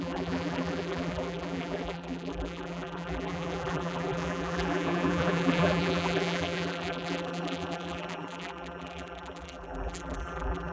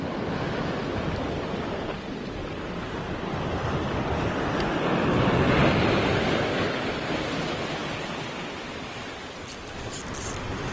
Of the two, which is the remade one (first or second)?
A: first